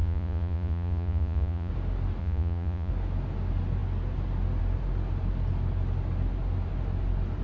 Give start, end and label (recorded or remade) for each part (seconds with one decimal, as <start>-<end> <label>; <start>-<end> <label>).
0.0-1.7 remade; 1.7-2.2 recorded; 2.2-2.9 remade; 2.9-7.4 recorded